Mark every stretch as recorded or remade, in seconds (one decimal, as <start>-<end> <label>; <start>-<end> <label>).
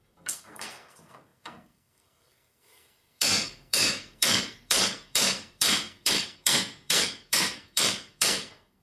0.0-8.8 remade